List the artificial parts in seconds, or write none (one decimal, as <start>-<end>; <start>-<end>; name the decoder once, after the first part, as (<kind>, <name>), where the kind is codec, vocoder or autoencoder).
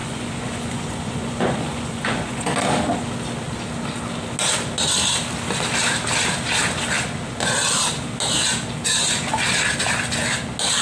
0.0-2.5 (vocoder, Vocos)